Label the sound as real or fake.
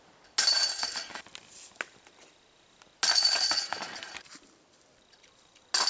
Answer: real